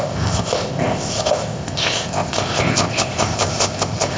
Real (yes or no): no